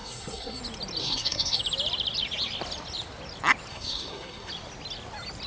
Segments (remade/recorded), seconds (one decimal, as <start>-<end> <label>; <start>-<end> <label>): 0.0-0.6 remade; 0.6-1.0 recorded; 1.0-1.6 remade; 1.6-3.7 recorded; 3.7-4.5 remade; 4.5-5.5 recorded